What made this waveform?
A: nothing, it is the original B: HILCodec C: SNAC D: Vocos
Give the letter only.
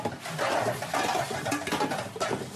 A